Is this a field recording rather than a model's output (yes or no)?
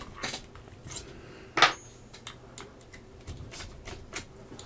yes